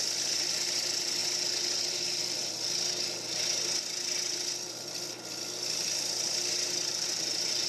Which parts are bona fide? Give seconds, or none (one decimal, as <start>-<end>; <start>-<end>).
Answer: 1.2-1.8; 2.4-6.9